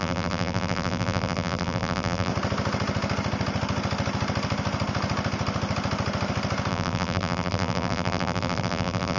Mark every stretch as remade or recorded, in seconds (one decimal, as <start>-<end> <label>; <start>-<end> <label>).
0.0-2.3 remade; 2.3-6.7 recorded; 6.7-9.2 remade